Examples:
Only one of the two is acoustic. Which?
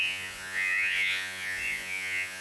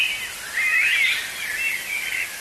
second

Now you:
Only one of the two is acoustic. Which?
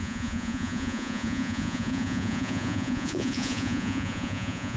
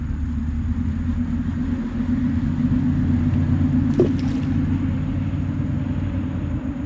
second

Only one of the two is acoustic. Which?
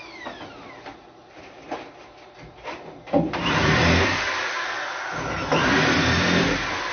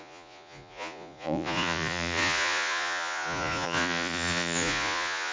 first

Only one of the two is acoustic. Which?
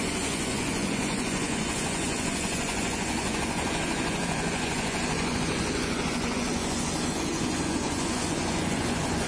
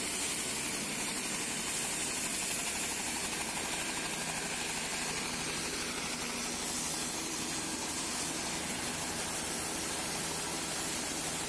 second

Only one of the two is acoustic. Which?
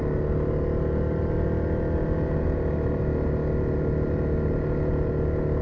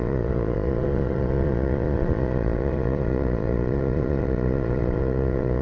first